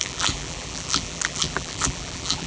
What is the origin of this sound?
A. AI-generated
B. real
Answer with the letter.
A